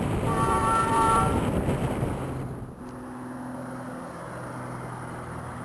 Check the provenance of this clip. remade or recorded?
remade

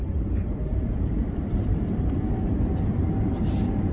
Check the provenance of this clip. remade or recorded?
remade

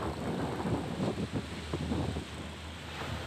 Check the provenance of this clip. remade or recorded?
recorded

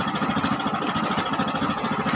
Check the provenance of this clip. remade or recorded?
recorded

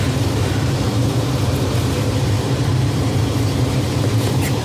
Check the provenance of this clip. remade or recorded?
remade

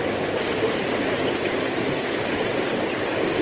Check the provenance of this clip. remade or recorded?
recorded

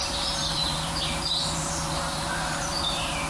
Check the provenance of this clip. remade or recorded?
remade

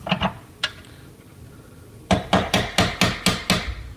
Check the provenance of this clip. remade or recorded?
recorded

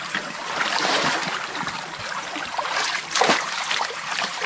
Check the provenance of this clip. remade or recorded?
remade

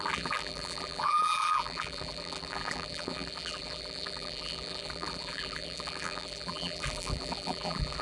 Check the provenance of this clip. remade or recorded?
remade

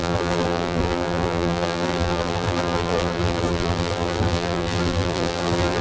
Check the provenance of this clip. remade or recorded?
remade